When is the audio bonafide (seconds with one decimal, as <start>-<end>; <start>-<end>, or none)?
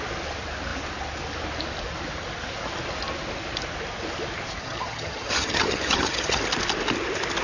0.0-4.6; 6.4-7.4